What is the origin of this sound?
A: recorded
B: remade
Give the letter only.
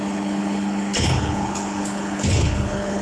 B